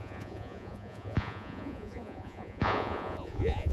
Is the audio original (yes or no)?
no